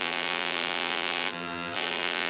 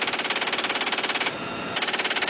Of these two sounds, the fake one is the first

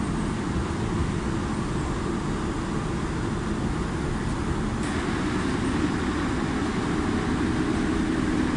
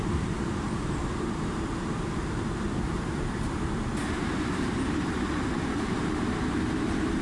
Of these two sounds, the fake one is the second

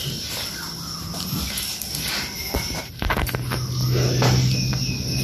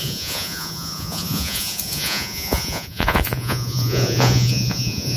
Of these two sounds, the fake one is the second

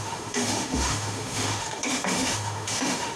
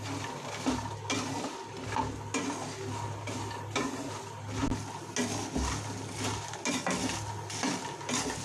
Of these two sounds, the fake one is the first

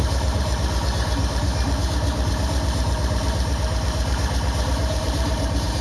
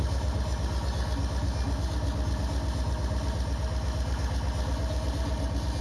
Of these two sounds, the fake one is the first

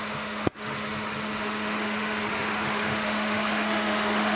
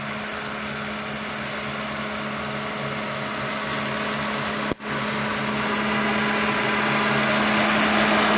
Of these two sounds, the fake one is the first